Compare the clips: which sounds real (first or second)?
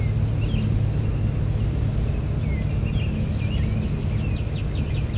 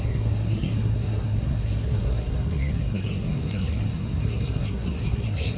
first